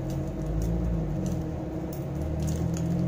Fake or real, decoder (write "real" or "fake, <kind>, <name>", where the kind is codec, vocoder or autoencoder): real